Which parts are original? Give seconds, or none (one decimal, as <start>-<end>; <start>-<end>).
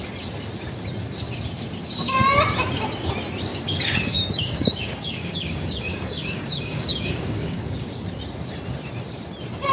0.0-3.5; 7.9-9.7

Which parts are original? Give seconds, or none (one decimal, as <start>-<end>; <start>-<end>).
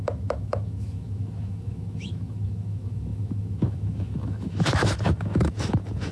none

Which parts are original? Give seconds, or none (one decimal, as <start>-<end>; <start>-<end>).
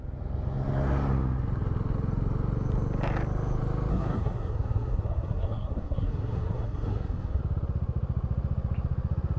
0.0-3.9; 7.4-9.4